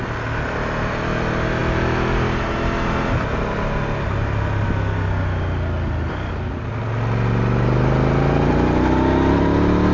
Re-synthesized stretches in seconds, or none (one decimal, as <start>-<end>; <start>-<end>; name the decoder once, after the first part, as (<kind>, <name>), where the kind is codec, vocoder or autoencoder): none